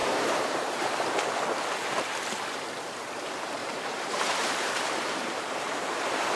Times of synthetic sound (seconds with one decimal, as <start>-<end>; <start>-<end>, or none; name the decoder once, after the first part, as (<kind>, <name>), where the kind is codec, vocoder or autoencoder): 0.0-0.9 (vocoder, BigVGAN v2); 3.6-6.4